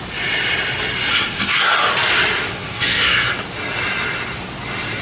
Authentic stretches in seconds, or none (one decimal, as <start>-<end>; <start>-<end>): 0.0-1.1; 1.7-2.5; 3.3-5.0